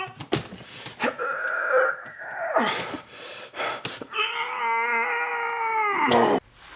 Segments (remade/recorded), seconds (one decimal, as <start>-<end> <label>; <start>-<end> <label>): 0.0-6.8 recorded